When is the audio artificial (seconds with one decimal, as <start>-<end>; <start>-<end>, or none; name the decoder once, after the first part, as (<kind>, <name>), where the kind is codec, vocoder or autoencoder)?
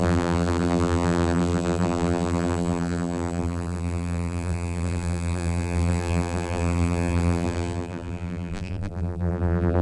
0.0-9.8 (vocoder, BigVGAN v2)